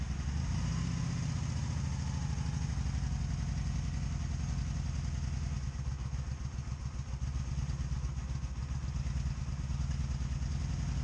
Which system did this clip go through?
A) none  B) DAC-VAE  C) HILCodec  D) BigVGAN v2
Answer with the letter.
A